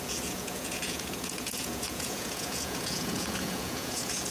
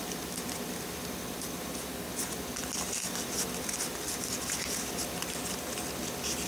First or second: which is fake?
first